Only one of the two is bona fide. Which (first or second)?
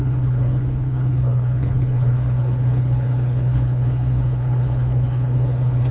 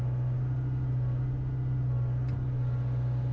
second